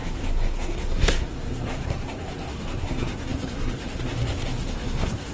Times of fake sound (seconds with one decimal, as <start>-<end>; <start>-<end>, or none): 0.0-5.3